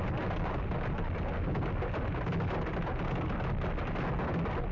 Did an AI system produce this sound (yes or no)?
no